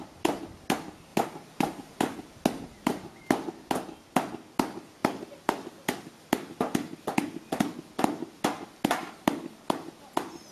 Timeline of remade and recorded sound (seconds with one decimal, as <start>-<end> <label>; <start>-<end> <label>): 0.0-1.1 recorded; 1.1-2.0 remade; 2.0-10.5 recorded